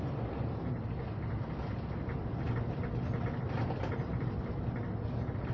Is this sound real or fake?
real